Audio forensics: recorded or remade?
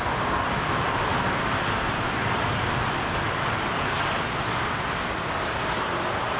recorded